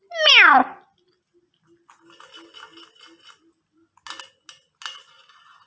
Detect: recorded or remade recorded